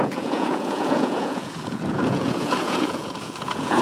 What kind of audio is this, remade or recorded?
remade